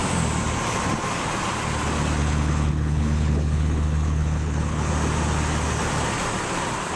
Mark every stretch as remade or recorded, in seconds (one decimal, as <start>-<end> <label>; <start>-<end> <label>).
0.0-2.2 recorded; 2.2-4.9 remade; 4.9-7.0 recorded